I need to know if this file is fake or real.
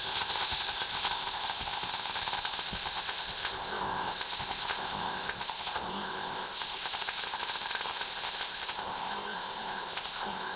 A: fake